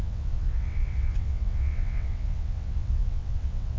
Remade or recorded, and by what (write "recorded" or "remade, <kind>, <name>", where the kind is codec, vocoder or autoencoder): remade, vocoder, WaveNeXt